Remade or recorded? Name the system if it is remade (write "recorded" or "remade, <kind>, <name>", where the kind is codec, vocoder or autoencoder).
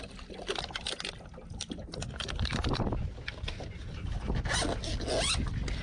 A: recorded